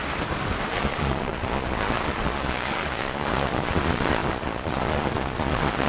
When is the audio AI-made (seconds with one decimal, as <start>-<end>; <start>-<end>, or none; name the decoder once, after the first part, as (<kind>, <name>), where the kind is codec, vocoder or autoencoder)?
0.7-5.9 (vocoder, Vocos)

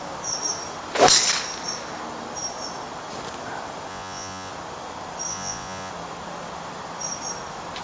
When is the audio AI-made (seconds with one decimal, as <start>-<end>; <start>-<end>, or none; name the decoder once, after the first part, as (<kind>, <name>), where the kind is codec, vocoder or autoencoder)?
3.9-4.5 (vocoder, Vocos); 5.3-5.9

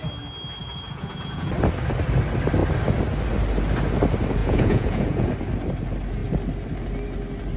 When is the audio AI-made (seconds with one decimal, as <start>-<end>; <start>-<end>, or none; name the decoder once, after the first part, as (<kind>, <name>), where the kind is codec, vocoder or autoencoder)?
0.6-1.5 (vocoder, Vocos); 4.4-5.3

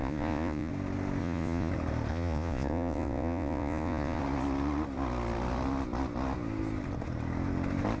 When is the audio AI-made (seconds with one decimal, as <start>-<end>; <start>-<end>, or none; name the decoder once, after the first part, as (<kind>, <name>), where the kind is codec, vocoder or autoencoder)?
0.0-0.7 (vocoder, Vocos); 1.2-1.7; 2.1-4.2